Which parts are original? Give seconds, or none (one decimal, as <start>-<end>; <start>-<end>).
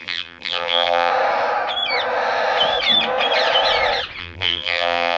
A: 1.1-4.2